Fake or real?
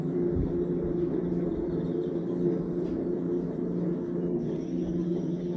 real